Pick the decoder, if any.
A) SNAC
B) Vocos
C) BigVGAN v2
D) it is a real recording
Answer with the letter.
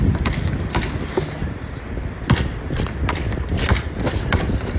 C